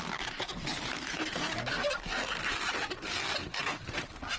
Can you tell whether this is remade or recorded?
remade